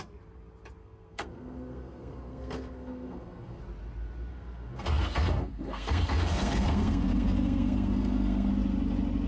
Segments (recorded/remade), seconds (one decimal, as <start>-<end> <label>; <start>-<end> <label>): 0.0-0.8 recorded; 0.8-3.6 remade; 3.6-4.3 recorded; 4.3-8.5 remade; 8.5-9.3 recorded

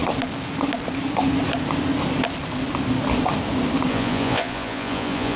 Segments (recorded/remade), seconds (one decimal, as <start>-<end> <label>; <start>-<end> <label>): 0.0-3.9 recorded; 3.9-5.4 remade

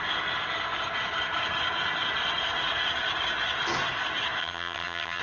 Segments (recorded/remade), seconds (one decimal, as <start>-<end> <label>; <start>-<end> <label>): 0.0-4.4 recorded; 4.4-5.2 remade

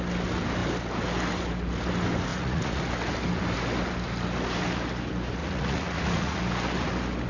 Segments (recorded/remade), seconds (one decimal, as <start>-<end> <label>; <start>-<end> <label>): 0.0-2.3 recorded; 2.3-2.8 remade; 2.8-5.4 recorded; 5.4-6.4 remade; 6.4-7.3 recorded

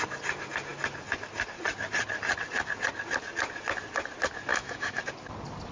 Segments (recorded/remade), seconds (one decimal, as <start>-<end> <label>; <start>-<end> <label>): 0.0-4.5 recorded; 4.5-5.0 remade; 5.0-5.7 recorded

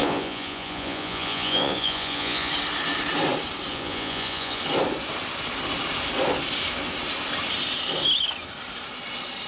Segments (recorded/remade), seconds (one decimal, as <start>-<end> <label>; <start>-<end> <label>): 0.0-2.5 remade; 2.5-3.7 recorded; 3.7-4.6 remade; 4.6-9.5 recorded

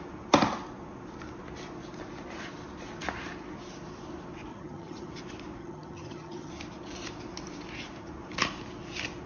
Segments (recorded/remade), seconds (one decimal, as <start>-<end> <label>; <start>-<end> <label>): 0.0-4.5 recorded; 4.5-5.1 remade; 5.1-5.6 recorded; 5.6-6.5 remade; 6.5-9.3 recorded

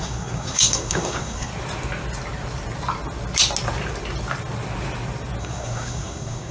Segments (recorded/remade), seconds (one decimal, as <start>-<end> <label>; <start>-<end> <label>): 0.0-1.5 remade; 1.5-5.4 recorded; 5.4-6.5 remade